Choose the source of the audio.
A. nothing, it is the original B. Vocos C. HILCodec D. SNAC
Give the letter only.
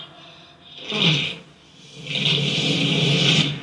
A